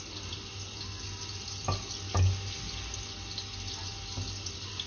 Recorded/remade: recorded